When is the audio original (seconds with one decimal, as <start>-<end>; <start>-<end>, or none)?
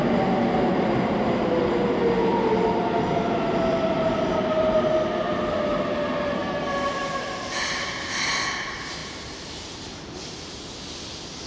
0.0-6.4; 8.3-9.0; 10.3-11.5